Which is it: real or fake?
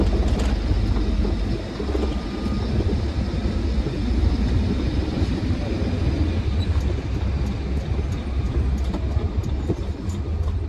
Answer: real